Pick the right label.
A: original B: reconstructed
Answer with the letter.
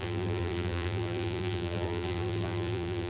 B